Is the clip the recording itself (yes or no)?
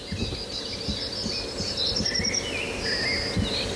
yes